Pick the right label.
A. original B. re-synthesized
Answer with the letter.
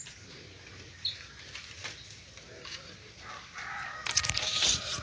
A